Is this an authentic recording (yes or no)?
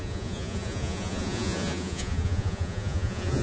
no